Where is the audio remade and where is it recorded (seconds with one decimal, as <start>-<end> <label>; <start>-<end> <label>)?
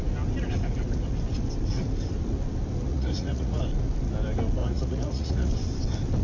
0.0-2.9 recorded; 2.9-3.6 remade; 3.6-4.6 recorded; 4.6-5.5 remade; 5.5-6.2 recorded